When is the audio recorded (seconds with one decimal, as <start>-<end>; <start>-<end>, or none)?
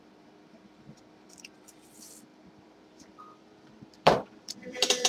none